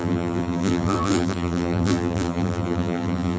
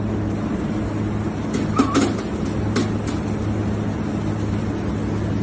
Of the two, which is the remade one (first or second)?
first